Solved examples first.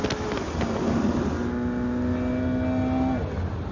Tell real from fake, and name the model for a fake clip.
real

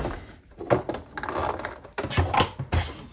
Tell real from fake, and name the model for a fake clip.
real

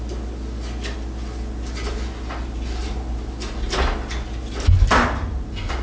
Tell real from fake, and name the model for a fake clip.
real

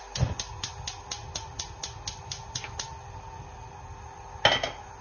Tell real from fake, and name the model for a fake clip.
real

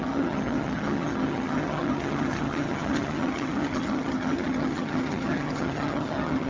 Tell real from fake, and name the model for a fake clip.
fake, vocoder, HiFi-GAN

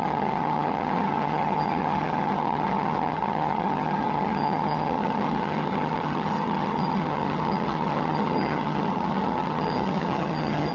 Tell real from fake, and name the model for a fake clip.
fake, vocoder, HiFi-GAN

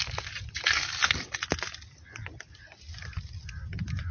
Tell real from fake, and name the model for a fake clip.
real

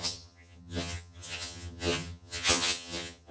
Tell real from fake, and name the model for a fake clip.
fake, vocoder, HiFi-GAN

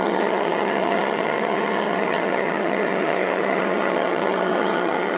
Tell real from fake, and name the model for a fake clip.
fake, vocoder, HiFi-GAN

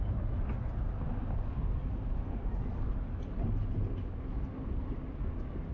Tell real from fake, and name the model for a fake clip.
real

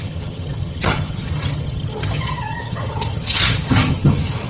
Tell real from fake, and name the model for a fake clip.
fake, vocoder, HiFi-GAN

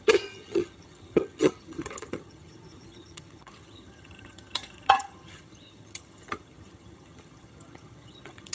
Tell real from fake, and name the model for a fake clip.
fake, vocoder, HiFi-GAN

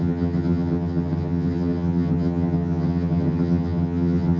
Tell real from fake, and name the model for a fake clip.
fake, vocoder, HiFi-GAN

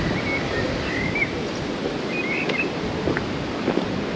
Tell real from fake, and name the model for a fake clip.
real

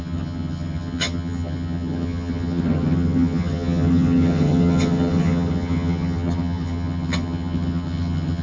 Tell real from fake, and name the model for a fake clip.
fake, vocoder, HiFi-GAN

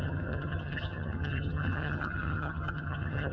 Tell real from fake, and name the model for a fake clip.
fake, vocoder, HiFi-GAN